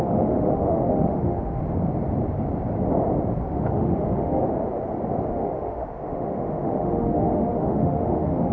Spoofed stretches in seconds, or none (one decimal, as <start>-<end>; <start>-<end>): 0.0-1.6; 3.4-4.4; 5.3-8.5